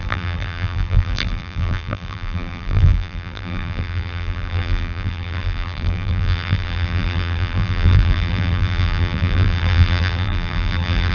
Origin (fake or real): fake